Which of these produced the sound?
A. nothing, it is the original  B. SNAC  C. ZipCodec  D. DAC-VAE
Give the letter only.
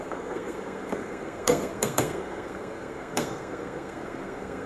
B